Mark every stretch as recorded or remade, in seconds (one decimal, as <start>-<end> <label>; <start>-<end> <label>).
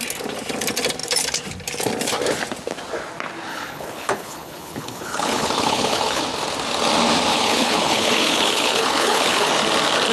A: 0.0-3.5 recorded; 3.5-6.2 remade; 6.2-7.3 recorded; 7.3-9.5 remade; 9.5-10.1 recorded